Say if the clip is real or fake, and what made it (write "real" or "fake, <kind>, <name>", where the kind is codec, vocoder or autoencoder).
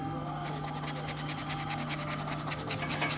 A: real